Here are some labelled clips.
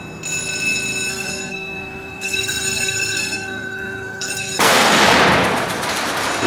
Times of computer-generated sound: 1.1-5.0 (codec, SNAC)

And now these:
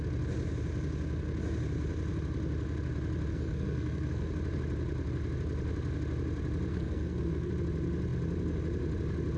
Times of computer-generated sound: 3.3-4.3 (codec, SNAC); 6.7-7.5